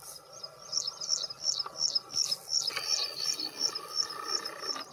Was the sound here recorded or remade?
recorded